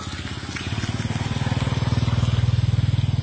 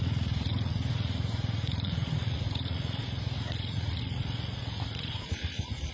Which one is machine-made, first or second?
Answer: second